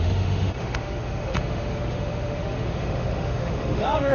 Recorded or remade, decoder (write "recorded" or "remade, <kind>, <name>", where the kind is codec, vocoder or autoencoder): remade, autoencoder, DAC-VAE